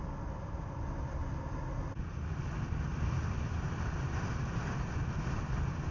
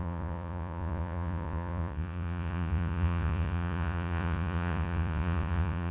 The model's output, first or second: second